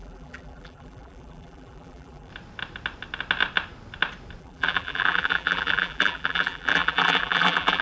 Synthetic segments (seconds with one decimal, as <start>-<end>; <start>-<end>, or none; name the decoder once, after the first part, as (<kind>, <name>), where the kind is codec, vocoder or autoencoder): 0.0-2.3 (vocoder, BigVGAN v2); 4.4-7.8